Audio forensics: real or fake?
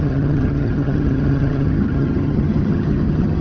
fake